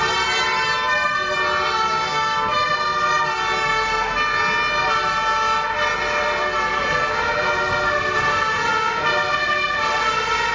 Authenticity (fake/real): real